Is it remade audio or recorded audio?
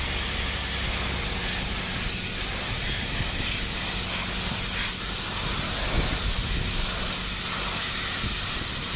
recorded